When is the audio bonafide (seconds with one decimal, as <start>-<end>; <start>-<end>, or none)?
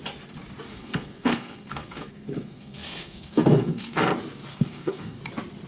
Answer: 0.0-0.7; 4.0-4.5; 5.2-5.7